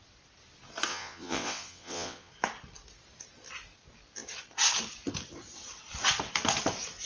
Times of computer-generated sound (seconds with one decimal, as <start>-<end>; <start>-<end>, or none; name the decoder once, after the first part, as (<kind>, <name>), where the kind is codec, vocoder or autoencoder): 0.9-2.3 (vocoder, WaveNeXt)